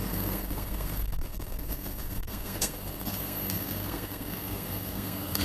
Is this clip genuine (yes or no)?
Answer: no